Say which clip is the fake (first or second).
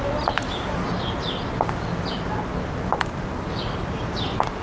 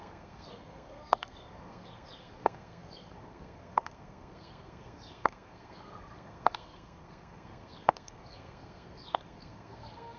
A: second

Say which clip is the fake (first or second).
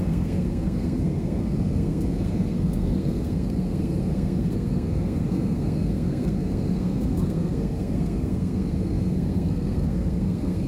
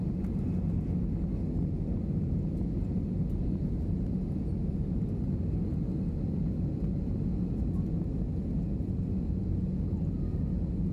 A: first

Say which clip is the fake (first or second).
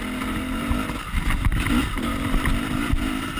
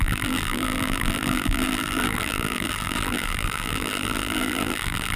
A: second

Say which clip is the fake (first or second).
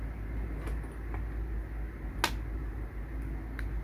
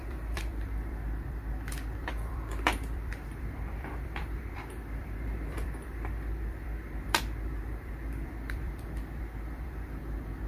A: second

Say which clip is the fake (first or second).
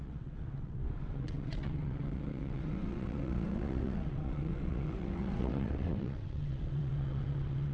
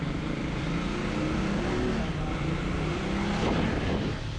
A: first